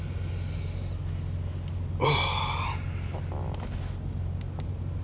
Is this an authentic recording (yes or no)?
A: yes